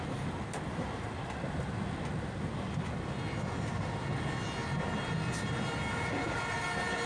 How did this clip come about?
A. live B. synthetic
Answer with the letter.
A